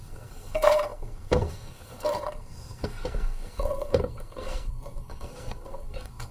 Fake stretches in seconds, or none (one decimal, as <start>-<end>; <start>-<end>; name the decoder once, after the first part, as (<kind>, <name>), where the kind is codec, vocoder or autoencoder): 0.0-6.3 (codec, SNAC)

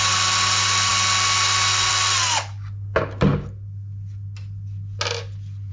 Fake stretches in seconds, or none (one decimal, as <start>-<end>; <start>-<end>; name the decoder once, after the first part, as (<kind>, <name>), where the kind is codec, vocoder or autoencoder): none

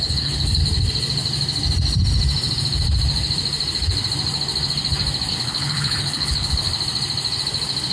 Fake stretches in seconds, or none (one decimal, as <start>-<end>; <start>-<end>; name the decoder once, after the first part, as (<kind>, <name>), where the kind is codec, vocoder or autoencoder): 0.0-0.6 (codec, HILCodec); 5.3-6.7

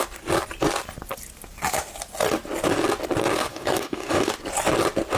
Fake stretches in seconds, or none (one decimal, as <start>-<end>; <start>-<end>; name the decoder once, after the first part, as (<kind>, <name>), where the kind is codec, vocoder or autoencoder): 3.5-4.3 (codec, DAC)

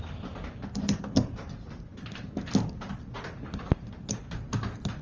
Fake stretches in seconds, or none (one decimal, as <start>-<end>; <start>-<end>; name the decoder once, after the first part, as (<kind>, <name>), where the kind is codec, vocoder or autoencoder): none

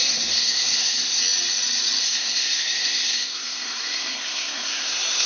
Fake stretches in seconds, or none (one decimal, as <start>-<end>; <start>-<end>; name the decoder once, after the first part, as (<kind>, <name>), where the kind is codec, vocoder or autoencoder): 0.0-1.2 (codec, SNAC); 2.0-5.3